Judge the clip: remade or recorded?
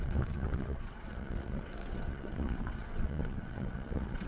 remade